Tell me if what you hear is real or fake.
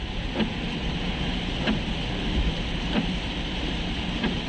real